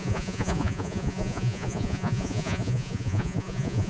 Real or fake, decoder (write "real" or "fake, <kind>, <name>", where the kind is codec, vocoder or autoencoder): fake, vocoder, Vocos